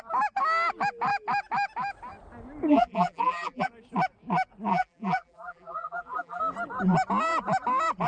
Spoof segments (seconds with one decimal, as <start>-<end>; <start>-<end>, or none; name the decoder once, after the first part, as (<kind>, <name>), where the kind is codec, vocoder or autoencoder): 2.7-3.7 (vocoder, BigVGAN v2); 4.7-6.4